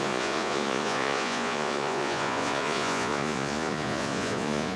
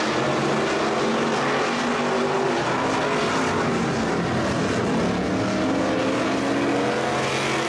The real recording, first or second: second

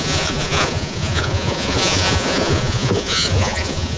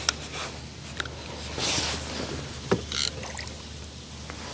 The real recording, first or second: second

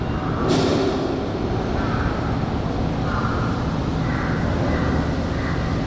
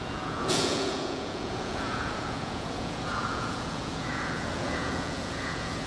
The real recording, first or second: first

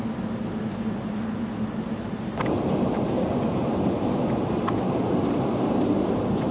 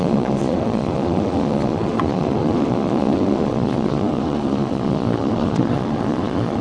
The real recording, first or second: first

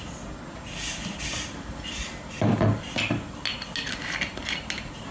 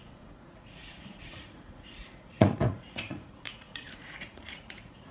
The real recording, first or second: first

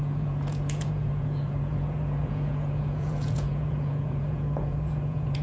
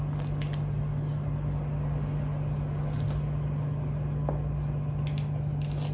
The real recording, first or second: second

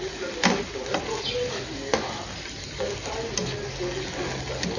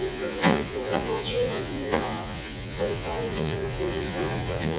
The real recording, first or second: first